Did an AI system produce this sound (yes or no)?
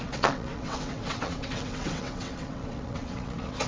yes